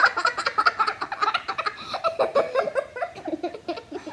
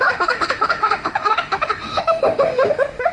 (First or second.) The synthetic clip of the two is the second